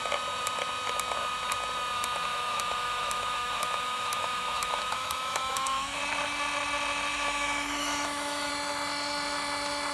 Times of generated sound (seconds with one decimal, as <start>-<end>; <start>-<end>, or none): 2.3-6.0; 7.1-8.5